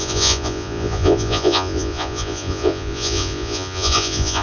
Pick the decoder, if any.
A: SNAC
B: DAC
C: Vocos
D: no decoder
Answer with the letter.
C